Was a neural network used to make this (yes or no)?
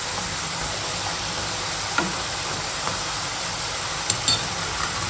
yes